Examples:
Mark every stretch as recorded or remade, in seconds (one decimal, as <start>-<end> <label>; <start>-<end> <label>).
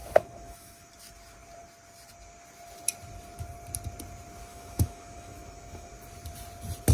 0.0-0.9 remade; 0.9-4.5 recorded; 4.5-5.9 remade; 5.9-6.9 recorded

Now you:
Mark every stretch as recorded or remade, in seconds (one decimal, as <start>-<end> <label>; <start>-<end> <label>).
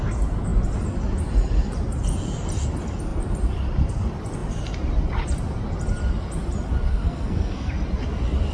0.0-6.9 recorded; 6.9-7.7 remade; 7.7-8.5 recorded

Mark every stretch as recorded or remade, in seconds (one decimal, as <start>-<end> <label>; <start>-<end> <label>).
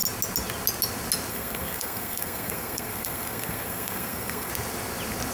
0.0-1.3 recorded; 1.3-4.5 remade; 4.5-5.3 recorded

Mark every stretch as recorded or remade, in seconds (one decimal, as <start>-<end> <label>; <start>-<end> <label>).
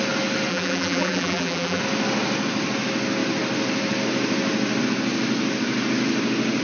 0.0-0.5 recorded; 0.5-1.8 remade; 1.8-6.6 recorded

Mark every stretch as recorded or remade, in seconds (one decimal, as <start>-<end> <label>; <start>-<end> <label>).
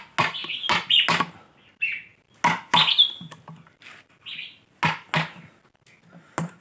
0.0-6.6 recorded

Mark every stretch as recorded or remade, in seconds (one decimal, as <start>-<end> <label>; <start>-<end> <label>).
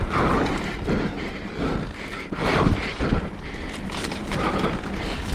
0.0-2.5 remade; 2.5-3.2 recorded; 3.2-5.3 remade